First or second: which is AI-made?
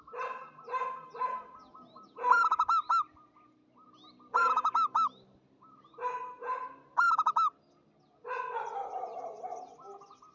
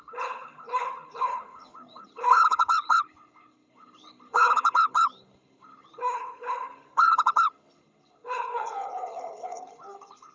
second